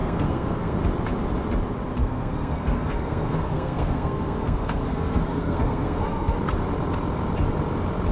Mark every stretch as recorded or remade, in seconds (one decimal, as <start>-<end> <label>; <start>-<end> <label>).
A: 0.0-0.8 remade; 0.8-2.0 recorded; 2.0-6.4 remade; 6.4-8.1 recorded